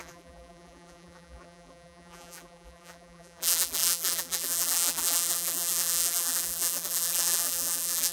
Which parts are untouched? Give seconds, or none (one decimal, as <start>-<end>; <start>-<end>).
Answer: none